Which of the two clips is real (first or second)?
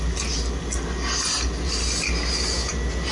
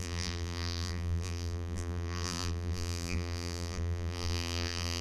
first